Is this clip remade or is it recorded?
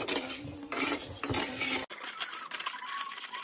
recorded